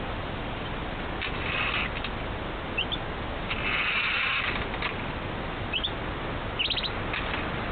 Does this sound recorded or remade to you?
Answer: recorded